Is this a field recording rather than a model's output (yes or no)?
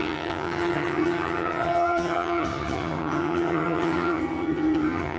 no